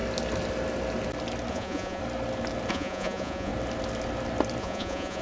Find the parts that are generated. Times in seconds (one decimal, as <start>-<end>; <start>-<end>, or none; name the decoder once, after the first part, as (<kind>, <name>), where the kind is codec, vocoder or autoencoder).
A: 1.5-2.0 (vocoder, Vocos); 2.7-3.5; 4.6-5.2